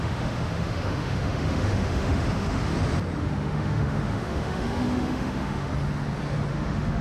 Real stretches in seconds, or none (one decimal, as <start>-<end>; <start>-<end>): 2.7-3.2; 5.7-6.5